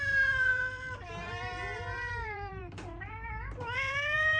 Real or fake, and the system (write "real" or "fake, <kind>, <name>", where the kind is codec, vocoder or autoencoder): fake, vocoder, BigVGAN v2